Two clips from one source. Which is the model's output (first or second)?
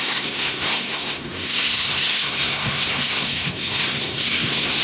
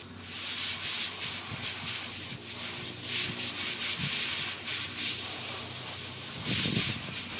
first